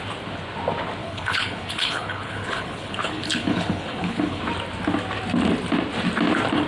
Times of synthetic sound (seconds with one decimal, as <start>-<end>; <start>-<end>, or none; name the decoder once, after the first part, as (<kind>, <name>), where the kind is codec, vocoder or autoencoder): 1.0-4.4 (codec, HILCodec)